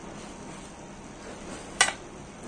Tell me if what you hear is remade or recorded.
recorded